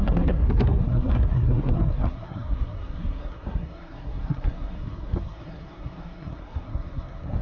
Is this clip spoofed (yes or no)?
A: yes